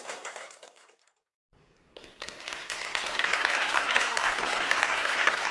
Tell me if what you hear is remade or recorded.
remade